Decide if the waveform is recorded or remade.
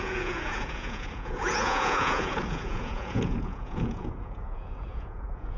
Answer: remade